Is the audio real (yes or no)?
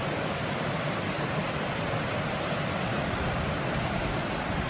yes